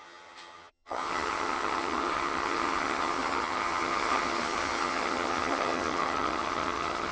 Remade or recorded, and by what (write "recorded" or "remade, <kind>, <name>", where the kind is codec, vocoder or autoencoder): remade, vocoder, HiFi-GAN